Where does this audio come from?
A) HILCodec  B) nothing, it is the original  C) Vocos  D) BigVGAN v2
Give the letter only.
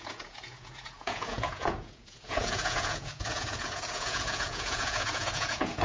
C